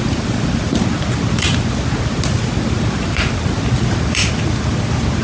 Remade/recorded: recorded